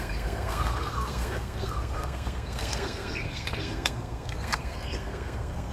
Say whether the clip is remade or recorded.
remade